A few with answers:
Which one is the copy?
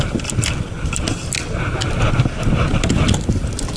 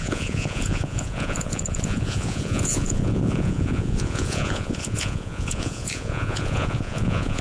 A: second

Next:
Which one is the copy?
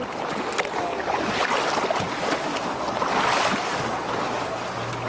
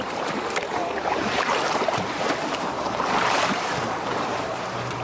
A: second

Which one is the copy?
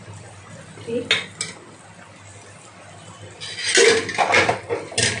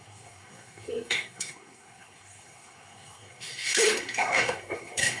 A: second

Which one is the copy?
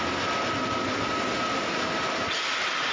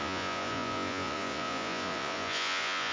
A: second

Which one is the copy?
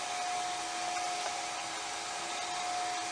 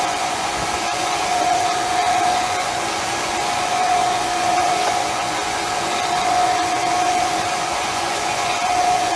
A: second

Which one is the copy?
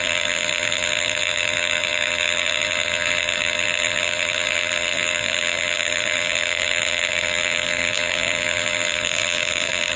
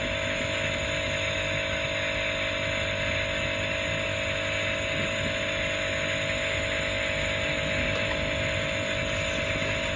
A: first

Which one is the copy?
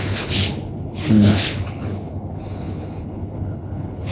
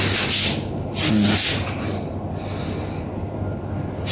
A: first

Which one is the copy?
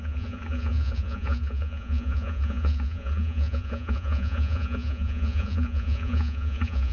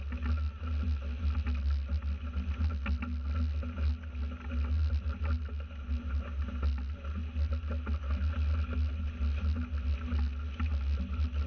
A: first